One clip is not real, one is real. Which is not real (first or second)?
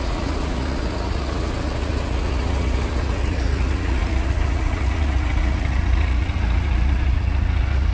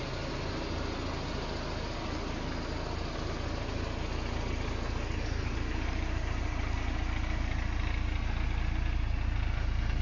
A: first